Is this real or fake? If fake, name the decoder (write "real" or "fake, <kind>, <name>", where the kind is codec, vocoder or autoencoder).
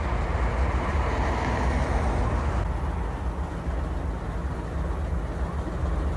real